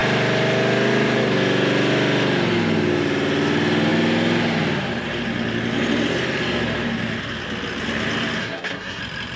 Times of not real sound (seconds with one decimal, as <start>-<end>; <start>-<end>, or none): 8.4-9.0